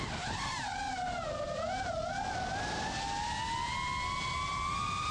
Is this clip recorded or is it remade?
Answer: recorded